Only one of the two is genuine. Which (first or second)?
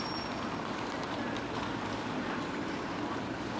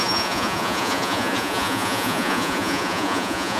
first